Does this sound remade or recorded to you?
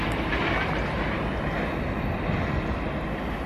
recorded